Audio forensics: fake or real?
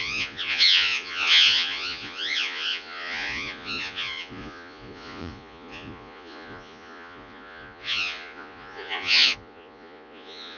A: fake